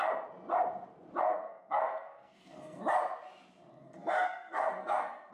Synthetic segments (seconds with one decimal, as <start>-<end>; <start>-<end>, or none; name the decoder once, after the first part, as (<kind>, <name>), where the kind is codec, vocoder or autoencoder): 1.3-2.8 (codec, SNAC); 3.8-5.3